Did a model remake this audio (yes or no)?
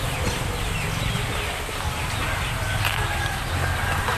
no